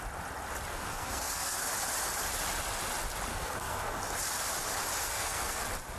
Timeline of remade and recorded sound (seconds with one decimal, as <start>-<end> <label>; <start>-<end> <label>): 0.0-0.7 recorded; 0.7-1.7 remade; 1.7-3.3 recorded; 3.3-4.0 remade; 4.0-5.0 recorded; 5.0-5.6 remade; 5.6-6.0 recorded